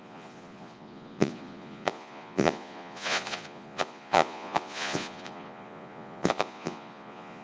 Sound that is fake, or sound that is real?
fake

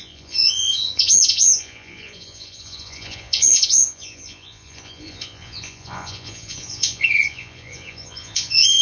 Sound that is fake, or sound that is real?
fake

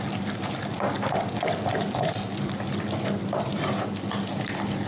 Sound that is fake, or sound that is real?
real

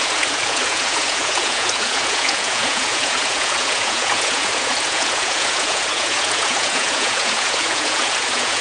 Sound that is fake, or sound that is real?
fake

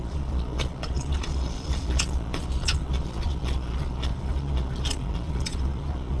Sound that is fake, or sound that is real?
fake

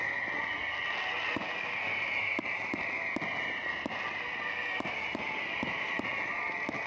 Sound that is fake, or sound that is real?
real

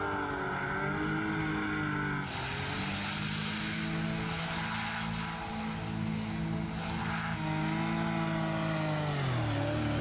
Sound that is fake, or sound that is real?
real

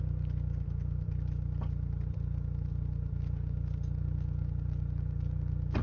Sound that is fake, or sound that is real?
real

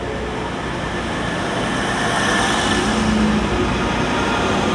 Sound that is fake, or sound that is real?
real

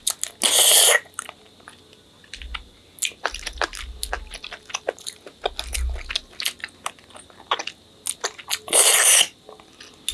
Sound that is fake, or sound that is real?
real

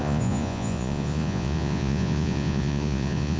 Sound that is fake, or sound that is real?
fake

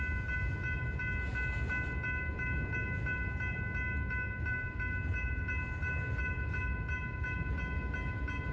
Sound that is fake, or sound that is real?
real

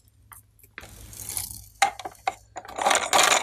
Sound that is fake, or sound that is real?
real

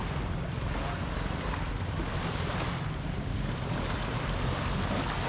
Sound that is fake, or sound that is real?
real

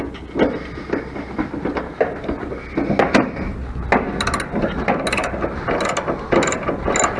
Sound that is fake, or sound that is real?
real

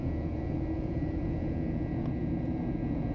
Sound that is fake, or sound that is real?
fake